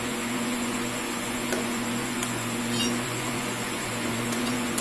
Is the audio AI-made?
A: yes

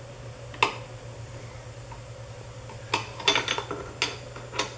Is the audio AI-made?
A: no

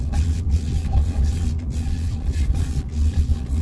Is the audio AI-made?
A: yes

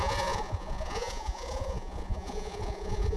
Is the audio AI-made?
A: yes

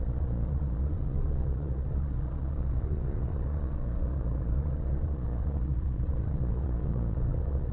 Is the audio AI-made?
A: yes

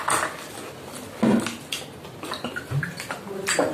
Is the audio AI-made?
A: no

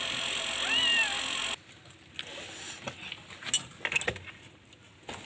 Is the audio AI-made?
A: no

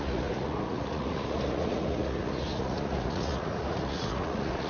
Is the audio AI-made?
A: yes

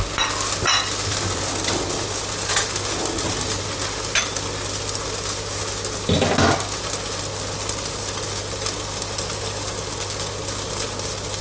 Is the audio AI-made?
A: no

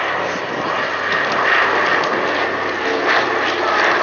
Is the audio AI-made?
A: no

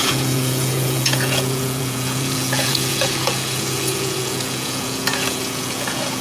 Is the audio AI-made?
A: yes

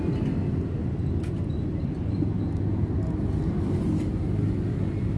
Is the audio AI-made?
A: no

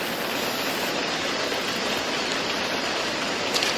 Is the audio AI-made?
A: no